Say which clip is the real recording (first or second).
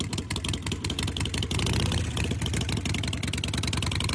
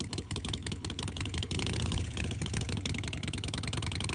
first